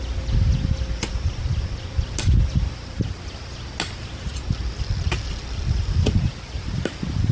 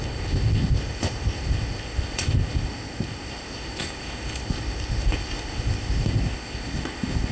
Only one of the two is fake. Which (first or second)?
second